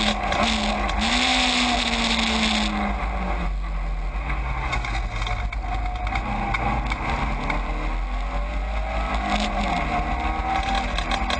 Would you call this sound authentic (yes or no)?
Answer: yes